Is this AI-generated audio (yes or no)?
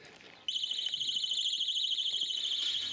no